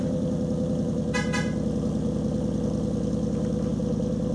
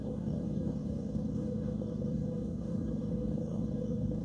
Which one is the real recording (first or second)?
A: first